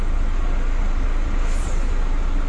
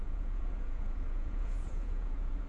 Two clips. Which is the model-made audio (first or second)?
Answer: second